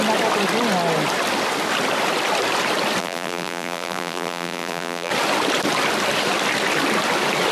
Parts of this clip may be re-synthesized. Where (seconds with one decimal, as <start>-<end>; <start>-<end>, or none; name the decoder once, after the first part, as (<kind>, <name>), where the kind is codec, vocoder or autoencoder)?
3.0-5.1 (vocoder, BigVGAN v2)